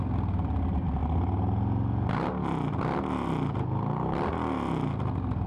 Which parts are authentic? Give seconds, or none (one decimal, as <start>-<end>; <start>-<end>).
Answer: 0.0-5.5

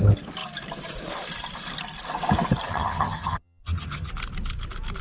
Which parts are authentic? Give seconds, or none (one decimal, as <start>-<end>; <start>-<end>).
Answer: 0.0-2.7; 4.1-5.0

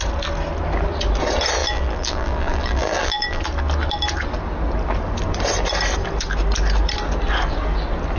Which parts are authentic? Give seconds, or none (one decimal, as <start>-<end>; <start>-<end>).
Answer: 0.0-1.6; 3.4-8.2

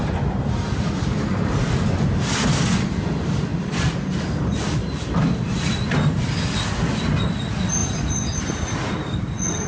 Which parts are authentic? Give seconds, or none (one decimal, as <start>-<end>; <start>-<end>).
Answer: 0.0-3.5; 5.8-7.8; 8.4-9.7

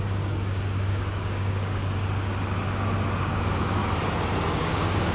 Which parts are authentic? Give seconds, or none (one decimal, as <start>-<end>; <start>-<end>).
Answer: 1.8-3.2; 3.8-4.5

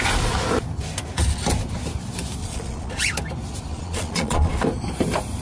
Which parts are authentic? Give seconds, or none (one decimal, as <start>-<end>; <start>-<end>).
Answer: 0.0-2.4; 3.0-3.7; 4.5-5.4

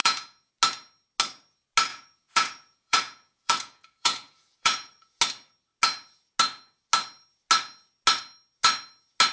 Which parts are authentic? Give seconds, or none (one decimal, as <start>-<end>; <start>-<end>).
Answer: 0.5-1.9; 5.2-9.3

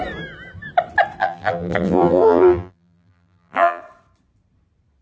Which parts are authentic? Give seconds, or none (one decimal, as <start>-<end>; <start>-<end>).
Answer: 0.0-1.2; 3.8-5.0